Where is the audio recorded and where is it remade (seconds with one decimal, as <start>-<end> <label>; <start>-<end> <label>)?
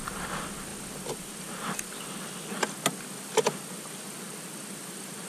0.0-5.3 recorded